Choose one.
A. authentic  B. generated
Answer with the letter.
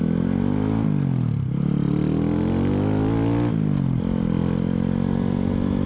A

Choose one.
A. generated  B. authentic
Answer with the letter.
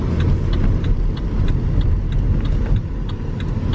B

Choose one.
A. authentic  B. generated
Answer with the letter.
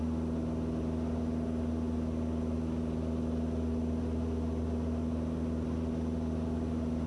A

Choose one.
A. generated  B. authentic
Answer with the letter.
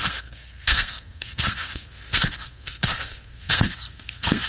A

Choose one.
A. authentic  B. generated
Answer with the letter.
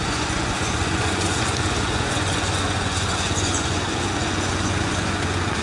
B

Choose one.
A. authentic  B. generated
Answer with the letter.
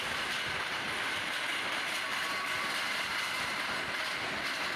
B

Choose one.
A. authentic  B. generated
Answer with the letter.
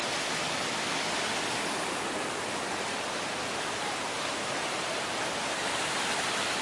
A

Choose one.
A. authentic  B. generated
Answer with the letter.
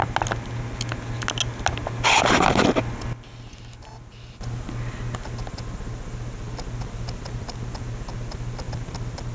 A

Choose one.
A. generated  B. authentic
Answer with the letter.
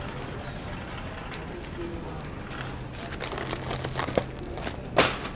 B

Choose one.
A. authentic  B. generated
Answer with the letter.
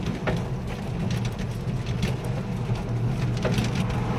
A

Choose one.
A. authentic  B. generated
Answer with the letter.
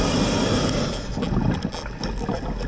A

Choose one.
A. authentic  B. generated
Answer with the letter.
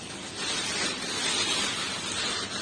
A